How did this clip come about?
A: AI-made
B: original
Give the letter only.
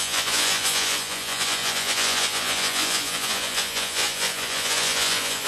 A